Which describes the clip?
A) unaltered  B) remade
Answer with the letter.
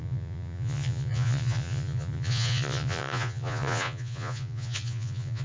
B